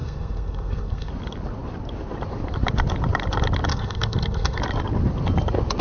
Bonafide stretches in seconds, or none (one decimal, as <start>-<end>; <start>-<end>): 1.1-3.7; 4.6-5.8